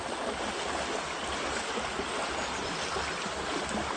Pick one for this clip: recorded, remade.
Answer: recorded